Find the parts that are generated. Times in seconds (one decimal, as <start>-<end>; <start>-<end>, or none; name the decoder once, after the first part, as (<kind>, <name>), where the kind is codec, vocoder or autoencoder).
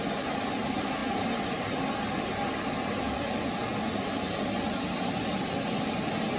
none